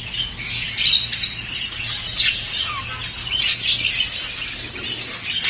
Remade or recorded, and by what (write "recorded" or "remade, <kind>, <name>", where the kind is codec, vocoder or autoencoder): recorded